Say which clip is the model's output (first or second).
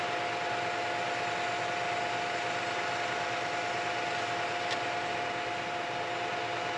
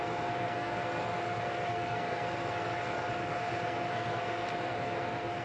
second